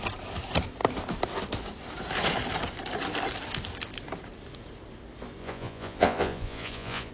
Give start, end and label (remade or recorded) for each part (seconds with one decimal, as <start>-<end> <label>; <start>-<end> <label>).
0.0-5.4 recorded; 5.4-7.1 remade